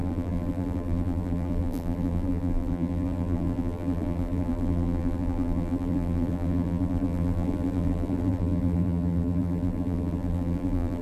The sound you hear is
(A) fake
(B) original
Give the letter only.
A